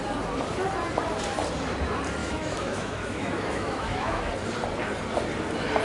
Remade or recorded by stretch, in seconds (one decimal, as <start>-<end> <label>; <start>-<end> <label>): 0.0-2.2 recorded; 2.2-4.3 remade; 4.3-5.8 recorded